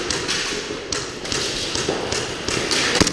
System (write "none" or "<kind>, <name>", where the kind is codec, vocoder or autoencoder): none